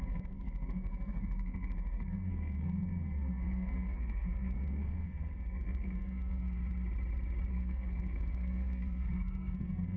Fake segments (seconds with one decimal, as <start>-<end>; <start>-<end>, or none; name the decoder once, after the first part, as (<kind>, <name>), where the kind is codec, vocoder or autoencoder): 0.0-6.6 (codec, SNAC); 7.5-10.0